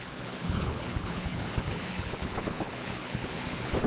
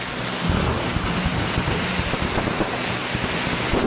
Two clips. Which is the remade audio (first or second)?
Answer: first